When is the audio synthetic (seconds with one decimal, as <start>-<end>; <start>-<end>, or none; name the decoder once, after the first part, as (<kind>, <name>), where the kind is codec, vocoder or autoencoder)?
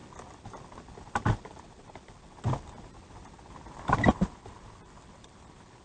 none